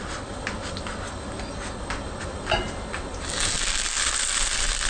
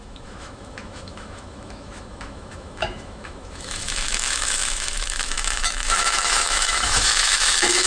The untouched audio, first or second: first